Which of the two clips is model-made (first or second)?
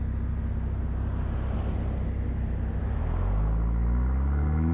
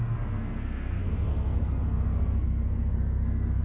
second